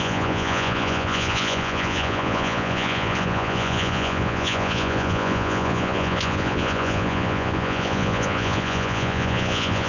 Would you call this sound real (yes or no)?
no